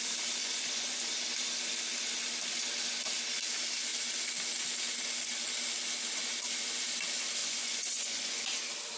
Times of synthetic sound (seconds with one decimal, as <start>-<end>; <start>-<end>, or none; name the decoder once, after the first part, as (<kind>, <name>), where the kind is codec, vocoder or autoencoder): 0.4-1.1 (vocoder, Vocos); 7.4-8.4